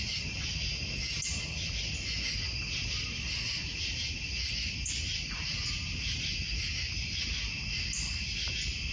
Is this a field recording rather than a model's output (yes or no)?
yes